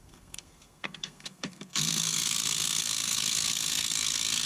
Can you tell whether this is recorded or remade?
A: remade